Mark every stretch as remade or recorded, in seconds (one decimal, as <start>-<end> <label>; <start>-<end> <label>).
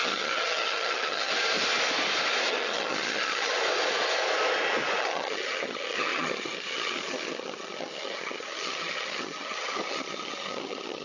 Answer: 0.0-1.3 remade; 1.3-2.5 recorded; 2.5-3.5 remade; 3.5-5.0 recorded; 5.0-11.0 remade